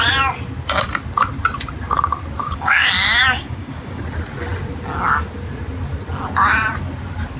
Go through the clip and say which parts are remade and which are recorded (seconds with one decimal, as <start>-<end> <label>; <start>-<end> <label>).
0.0-2.4 recorded; 2.4-4.0 remade; 4.0-7.4 recorded